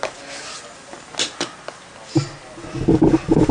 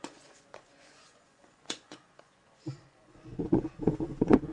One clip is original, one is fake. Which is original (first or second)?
first